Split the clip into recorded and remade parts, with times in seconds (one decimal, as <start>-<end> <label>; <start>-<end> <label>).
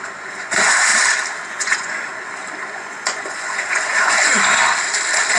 0.0-0.9 remade; 0.9-1.5 recorded; 1.5-2.1 remade; 2.1-2.7 recorded; 2.7-4.6 remade; 4.6-5.4 recorded